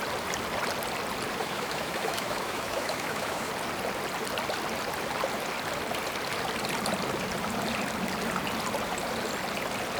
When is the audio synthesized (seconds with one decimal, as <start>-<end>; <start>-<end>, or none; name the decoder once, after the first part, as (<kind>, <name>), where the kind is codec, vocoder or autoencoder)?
1.4-3.5 (autoencoder, DAC-VAE)